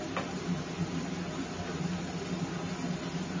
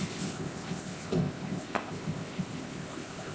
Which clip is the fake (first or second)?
second